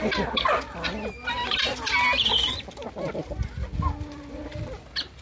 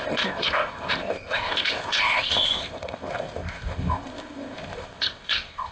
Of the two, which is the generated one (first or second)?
second